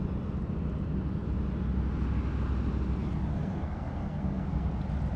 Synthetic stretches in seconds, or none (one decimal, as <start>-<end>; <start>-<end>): 3.3-4.8

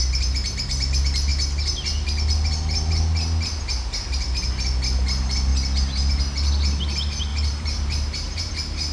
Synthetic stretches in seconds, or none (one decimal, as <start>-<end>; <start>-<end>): 7.3-8.5

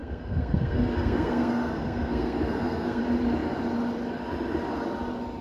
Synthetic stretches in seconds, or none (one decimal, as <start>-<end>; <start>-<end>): 0.0-3.0

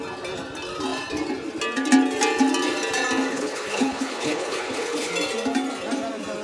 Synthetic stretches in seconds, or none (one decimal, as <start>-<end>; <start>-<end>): 3.3-5.1

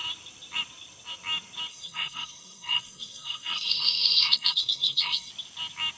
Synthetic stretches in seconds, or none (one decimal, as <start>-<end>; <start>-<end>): 1.7-5.3

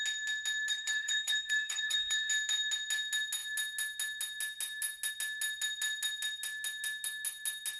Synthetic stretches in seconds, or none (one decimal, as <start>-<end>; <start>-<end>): 0.7-2.3

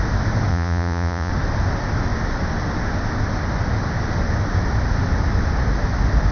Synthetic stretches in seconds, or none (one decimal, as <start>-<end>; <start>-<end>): 0.5-1.3

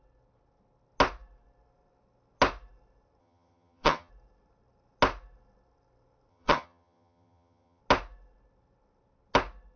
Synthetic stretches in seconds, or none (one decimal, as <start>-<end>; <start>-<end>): 3.2-4.1; 6.3-7.8